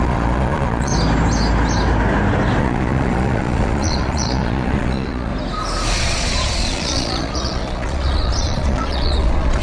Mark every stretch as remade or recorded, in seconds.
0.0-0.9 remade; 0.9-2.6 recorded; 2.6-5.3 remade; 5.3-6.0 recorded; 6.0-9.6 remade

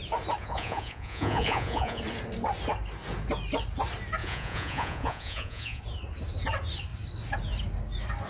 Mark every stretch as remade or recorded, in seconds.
0.0-0.4 recorded; 0.4-2.0 remade; 2.0-4.2 recorded; 4.2-5.8 remade; 5.8-8.3 recorded

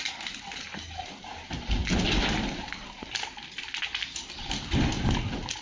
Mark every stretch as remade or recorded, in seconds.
0.0-5.6 recorded